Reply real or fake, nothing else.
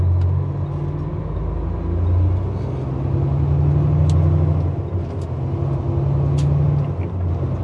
real